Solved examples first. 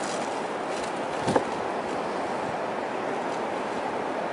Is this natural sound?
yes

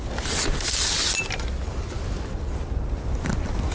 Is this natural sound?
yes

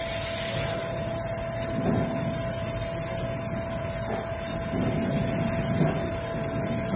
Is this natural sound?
yes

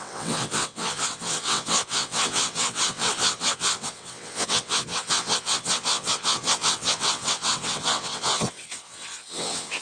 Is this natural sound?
no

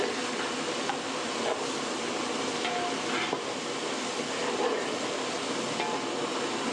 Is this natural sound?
yes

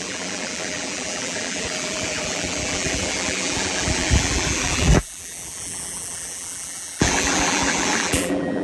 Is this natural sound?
no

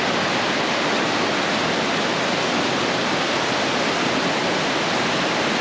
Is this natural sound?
yes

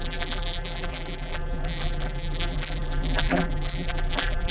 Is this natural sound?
no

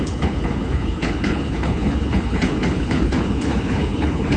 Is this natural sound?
no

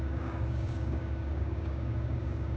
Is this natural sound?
no